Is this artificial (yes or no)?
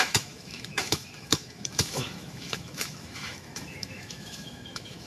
yes